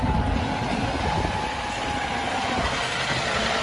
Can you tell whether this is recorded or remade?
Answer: recorded